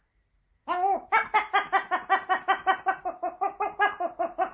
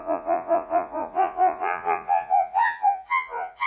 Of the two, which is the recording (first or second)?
first